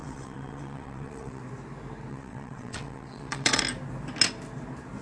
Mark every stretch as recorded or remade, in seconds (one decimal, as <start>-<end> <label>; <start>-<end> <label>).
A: 0.0-1.4 remade; 1.4-2.1 recorded; 2.1-3.6 remade; 3.6-5.0 recorded